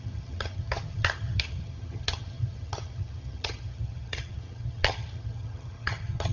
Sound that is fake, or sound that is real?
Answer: fake